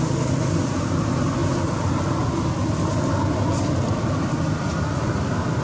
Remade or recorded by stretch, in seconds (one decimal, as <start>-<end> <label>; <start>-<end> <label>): 0.0-5.6 recorded

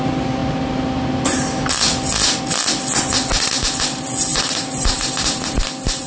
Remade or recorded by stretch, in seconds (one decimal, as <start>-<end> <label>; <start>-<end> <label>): 0.0-4.3 recorded; 4.3-5.4 remade; 5.4-6.1 recorded

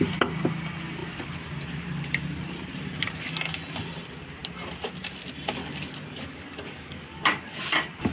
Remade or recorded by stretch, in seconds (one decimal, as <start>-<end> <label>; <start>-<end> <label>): 0.0-5.6 recorded; 5.6-7.6 remade; 7.6-8.1 recorded

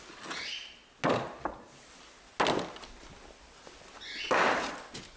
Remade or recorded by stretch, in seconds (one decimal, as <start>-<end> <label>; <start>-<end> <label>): 0.0-5.2 recorded

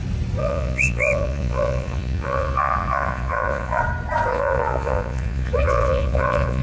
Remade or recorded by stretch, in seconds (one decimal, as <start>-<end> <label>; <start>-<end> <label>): 0.0-0.4 recorded; 0.4-3.8 remade; 3.8-4.3 recorded; 4.3-6.6 remade